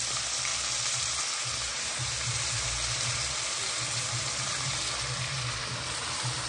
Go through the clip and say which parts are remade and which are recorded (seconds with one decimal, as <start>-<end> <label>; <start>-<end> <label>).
0.0-0.5 recorded; 0.5-1.2 remade; 1.2-1.7 recorded; 1.7-5.6 remade; 5.6-6.5 recorded